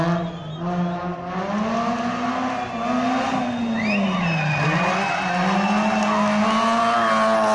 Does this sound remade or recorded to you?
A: recorded